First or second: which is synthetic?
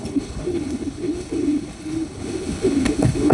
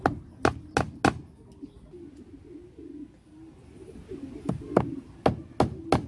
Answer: first